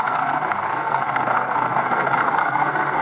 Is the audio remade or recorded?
remade